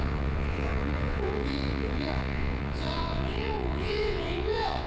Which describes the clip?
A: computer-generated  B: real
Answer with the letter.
A